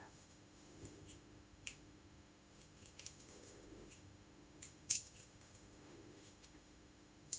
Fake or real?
fake